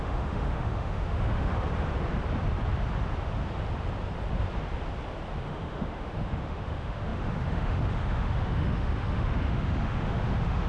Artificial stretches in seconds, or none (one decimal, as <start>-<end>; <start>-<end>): 0.0-1.5; 5.4-10.7